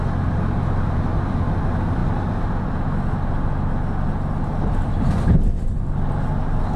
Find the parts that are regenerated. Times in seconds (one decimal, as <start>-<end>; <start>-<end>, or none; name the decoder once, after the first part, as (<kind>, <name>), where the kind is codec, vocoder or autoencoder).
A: none